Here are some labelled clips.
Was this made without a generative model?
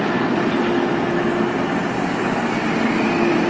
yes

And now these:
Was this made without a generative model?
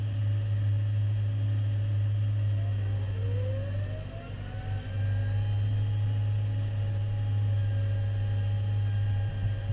yes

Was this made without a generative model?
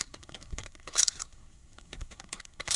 no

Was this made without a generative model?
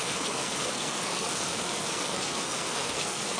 no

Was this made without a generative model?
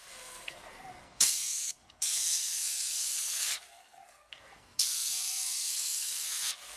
no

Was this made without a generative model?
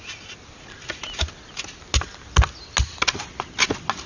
yes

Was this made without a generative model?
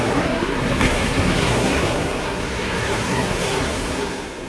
no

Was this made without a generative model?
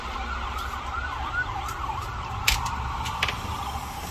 yes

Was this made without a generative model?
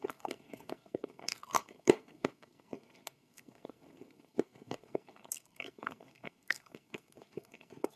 no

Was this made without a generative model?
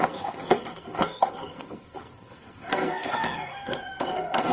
no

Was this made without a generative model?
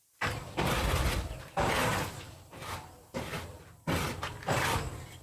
yes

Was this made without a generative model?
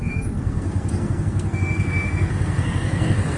no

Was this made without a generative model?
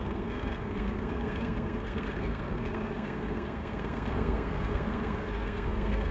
no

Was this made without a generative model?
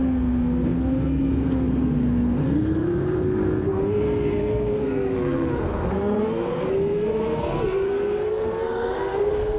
no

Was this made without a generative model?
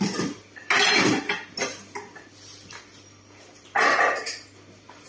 yes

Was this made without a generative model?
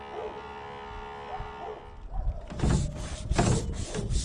yes